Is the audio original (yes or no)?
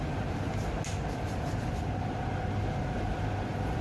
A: yes